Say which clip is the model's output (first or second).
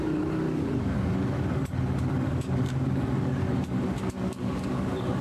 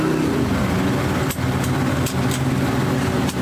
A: first